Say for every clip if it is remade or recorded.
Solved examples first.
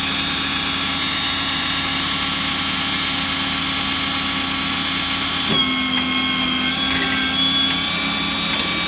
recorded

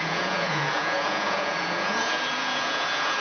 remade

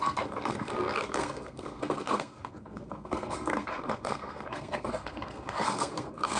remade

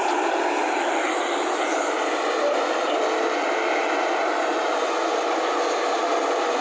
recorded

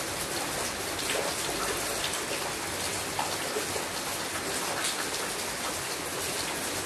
recorded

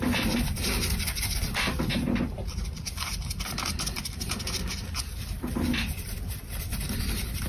recorded